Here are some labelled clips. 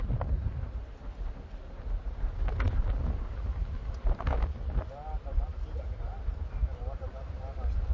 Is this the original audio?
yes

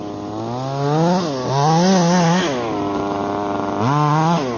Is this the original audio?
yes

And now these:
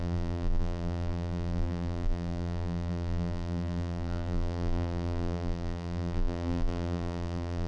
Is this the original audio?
no